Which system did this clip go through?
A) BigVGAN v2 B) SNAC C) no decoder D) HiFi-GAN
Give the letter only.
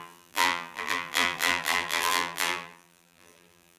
A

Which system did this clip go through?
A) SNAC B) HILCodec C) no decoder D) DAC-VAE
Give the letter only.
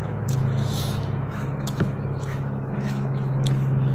D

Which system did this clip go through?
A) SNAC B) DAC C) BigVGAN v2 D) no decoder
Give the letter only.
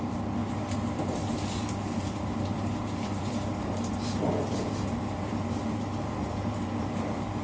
C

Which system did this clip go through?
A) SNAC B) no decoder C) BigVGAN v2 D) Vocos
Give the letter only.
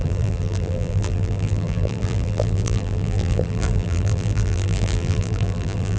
C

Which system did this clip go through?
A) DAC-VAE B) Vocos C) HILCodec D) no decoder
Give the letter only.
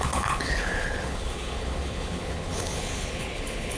C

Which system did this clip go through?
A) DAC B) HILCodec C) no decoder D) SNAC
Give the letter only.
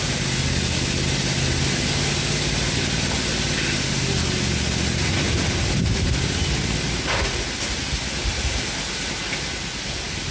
C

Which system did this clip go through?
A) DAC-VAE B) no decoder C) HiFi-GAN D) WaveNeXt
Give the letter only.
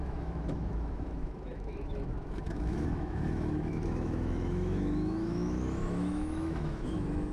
A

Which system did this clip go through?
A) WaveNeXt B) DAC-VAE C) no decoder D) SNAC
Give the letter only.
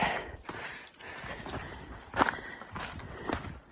C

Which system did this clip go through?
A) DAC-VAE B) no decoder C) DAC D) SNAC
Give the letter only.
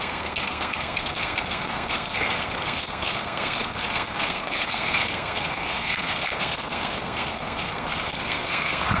D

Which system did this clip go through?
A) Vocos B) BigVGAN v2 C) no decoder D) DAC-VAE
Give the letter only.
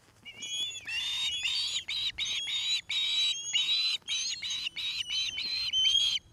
C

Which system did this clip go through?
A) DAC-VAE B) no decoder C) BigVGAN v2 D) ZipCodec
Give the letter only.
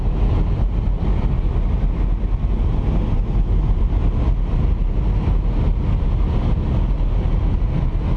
B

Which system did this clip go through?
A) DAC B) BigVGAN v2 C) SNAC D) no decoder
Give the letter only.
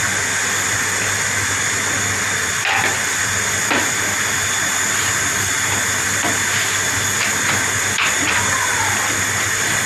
D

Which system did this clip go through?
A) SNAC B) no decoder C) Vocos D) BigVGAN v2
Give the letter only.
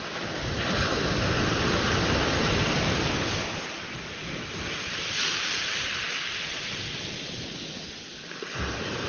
B